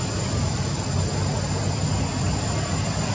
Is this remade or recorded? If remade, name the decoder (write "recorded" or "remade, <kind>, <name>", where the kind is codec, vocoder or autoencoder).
recorded